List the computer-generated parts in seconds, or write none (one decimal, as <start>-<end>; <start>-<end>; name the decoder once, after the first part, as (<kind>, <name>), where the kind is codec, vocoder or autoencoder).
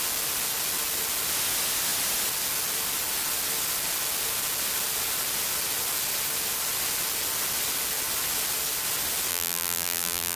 9.3-10.4 (vocoder, BigVGAN v2)